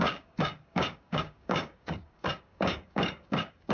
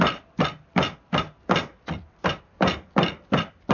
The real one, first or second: second